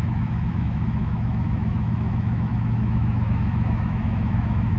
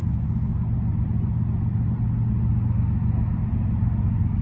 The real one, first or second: second